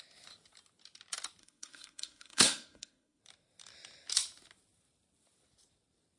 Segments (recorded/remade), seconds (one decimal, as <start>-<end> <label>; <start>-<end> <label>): 0.0-1.4 recorded; 1.4-3.2 remade; 3.2-6.2 recorded